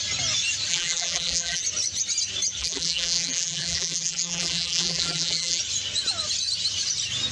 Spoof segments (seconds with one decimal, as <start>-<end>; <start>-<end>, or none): 0.7-1.6; 2.6-5.6